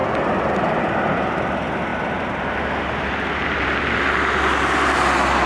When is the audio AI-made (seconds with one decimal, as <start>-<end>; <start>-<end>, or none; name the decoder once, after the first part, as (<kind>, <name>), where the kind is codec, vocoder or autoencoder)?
none